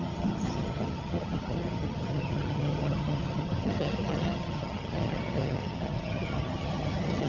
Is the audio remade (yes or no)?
yes